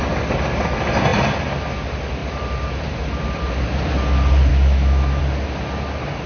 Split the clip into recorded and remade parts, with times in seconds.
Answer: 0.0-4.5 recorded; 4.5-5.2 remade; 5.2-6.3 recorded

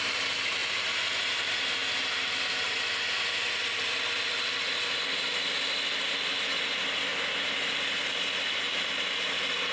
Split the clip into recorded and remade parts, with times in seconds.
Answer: 0.0-9.7 recorded

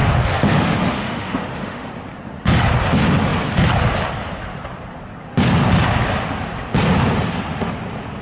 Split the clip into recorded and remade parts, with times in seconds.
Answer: 0.0-1.9 remade; 1.9-8.2 recorded

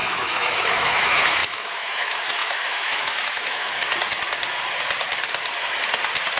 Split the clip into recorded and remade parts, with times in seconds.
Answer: 0.0-3.7 remade; 3.7-6.4 recorded

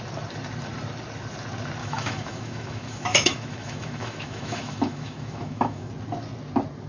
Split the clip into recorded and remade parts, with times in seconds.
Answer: 0.0-1.8 recorded; 1.8-5.9 remade; 5.9-6.9 recorded

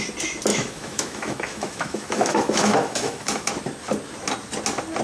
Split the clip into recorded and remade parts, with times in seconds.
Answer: 0.0-0.5 recorded; 0.5-3.5 remade; 3.5-5.0 recorded

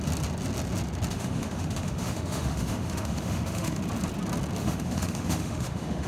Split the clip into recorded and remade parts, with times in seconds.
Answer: 0.0-1.1 recorded; 1.1-3.8 remade; 3.8-4.6 recorded; 4.6-6.1 remade